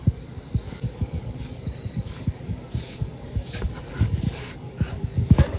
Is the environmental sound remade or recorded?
remade